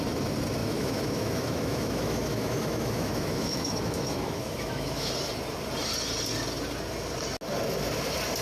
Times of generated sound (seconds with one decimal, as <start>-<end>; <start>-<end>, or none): 0.6-5.1

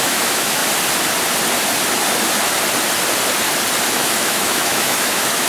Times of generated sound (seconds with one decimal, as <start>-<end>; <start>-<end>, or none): 0.0-0.6; 3.9-5.5

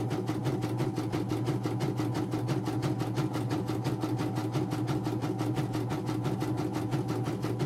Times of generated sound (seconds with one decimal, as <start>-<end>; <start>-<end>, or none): none

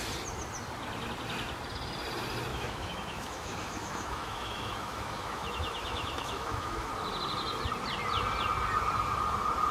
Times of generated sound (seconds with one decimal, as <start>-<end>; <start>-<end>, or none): 2.5-6.9

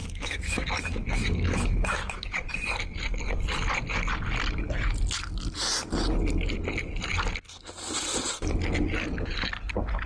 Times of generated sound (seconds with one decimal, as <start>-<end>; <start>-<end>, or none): 0.0-2.5

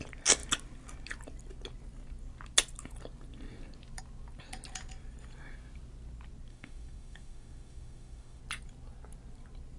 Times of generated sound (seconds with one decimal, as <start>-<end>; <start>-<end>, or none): 6.5-8.4